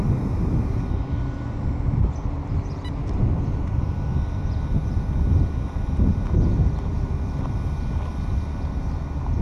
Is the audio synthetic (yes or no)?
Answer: no